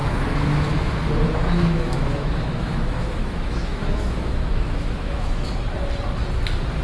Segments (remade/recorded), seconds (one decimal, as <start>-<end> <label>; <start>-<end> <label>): 0.0-0.9 remade; 0.9-1.4 recorded; 1.4-5.5 remade; 5.5-6.8 recorded